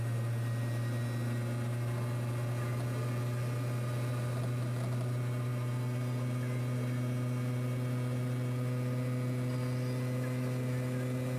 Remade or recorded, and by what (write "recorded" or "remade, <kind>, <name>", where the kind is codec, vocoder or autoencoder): recorded